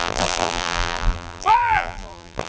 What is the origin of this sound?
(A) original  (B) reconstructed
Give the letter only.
B